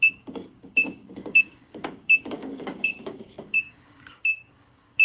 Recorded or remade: remade